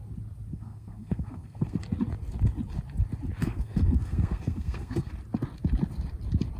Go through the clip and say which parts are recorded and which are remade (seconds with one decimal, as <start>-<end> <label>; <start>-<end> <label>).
0.0-0.5 recorded; 0.5-1.8 remade; 1.8-3.4 recorded; 3.4-5.1 remade; 5.1-6.6 recorded